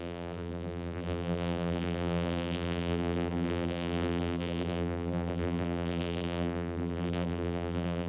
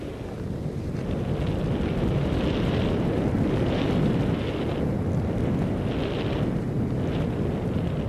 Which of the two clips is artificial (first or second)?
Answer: first